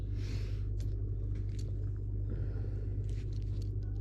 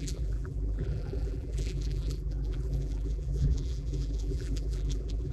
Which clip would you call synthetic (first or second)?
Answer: second